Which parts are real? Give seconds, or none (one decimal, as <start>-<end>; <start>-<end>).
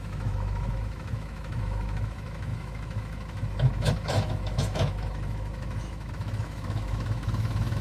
none